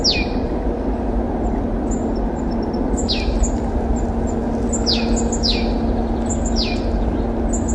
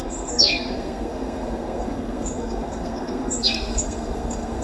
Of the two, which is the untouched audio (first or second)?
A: first